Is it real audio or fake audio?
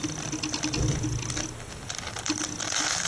real